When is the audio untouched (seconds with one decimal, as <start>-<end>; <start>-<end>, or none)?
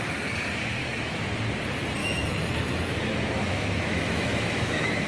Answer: 0.0-0.8; 1.3-2.0